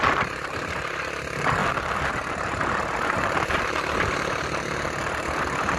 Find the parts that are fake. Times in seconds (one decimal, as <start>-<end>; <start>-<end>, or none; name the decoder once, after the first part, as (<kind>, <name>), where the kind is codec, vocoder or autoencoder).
none